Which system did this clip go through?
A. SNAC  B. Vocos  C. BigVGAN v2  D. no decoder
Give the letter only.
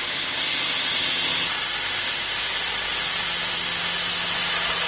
D